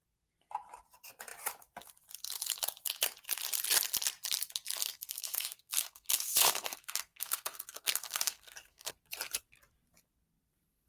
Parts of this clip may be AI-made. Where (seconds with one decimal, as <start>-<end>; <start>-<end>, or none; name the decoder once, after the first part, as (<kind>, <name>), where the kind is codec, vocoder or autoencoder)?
4.8-8.9 (codec, SNAC)